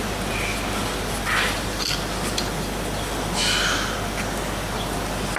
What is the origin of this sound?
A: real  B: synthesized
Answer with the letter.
A